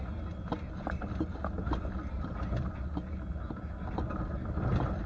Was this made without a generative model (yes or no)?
yes